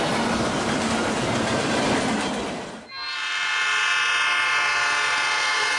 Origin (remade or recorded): recorded